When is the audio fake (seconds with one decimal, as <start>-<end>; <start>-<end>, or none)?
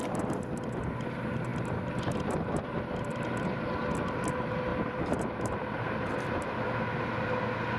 4.7-6.1